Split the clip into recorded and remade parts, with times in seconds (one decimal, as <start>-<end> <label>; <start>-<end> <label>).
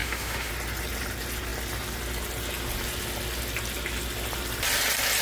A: 0.0-0.5 remade; 0.5-5.2 recorded